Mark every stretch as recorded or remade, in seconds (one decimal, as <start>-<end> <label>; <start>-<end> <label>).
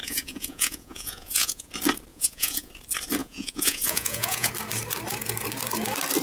0.0-1.7 remade; 1.7-2.1 recorded; 2.1-2.7 remade; 2.7-3.2 recorded; 3.2-4.5 remade; 4.5-6.2 recorded